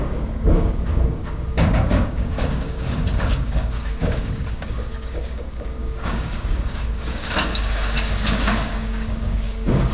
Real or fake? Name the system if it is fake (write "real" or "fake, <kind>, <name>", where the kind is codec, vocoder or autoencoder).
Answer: fake, codec, DAC